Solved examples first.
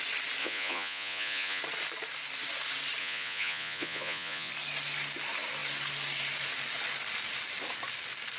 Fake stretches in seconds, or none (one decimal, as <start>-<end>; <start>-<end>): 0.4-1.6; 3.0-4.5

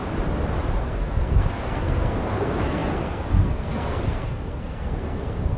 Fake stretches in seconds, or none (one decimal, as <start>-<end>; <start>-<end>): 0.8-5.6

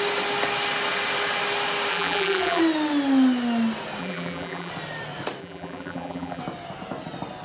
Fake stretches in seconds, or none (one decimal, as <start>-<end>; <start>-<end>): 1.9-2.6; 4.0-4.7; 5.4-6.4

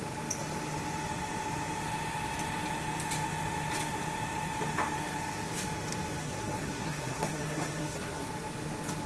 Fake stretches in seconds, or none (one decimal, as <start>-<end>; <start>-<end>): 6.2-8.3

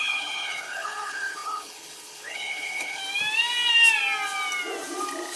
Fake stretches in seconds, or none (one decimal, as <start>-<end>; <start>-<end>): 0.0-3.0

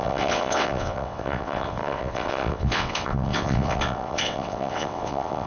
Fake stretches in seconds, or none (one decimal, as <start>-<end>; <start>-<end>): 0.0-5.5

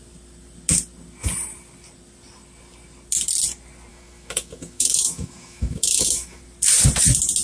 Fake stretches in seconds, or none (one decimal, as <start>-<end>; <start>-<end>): 3.9-6.4